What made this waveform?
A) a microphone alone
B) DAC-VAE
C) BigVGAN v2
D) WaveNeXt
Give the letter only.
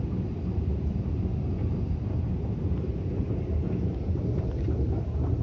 A